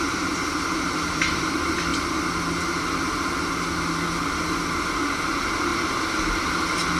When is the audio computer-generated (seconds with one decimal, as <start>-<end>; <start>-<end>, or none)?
0.0-1.9; 5.0-5.7; 6.3-7.0